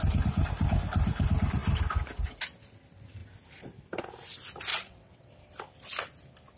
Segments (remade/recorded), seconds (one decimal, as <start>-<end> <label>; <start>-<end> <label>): 0.0-4.7 recorded; 4.7-5.3 remade; 5.3-6.6 recorded